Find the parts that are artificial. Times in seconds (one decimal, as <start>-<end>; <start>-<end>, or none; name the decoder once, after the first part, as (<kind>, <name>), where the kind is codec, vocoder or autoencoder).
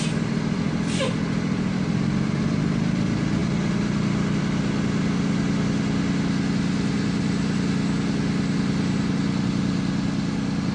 none